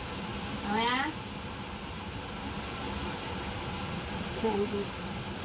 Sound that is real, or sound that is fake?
real